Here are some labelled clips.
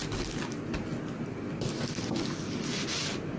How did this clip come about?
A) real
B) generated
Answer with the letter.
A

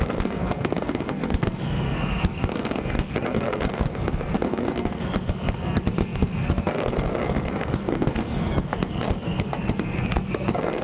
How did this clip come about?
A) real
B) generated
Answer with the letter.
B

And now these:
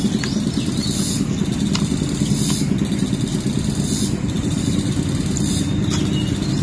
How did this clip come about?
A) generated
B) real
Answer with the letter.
B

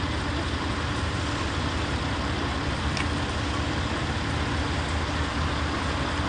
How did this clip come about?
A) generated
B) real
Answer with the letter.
B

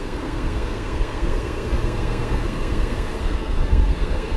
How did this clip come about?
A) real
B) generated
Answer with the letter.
B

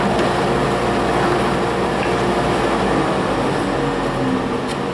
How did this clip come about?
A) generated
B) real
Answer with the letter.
B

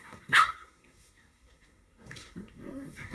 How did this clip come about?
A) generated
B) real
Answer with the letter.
A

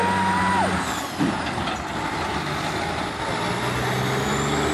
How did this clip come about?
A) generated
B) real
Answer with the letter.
B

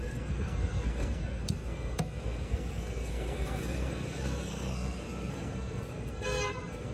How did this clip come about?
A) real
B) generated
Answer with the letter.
B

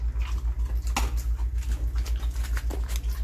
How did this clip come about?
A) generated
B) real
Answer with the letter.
B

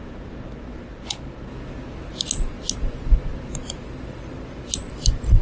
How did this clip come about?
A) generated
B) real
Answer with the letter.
B